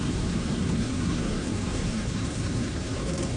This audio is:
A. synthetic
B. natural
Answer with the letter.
A